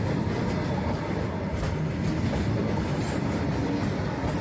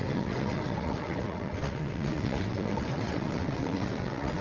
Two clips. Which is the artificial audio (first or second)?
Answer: second